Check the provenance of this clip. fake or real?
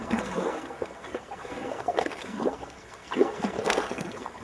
fake